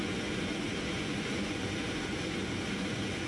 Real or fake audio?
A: fake